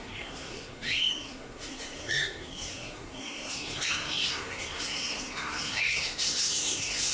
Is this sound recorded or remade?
remade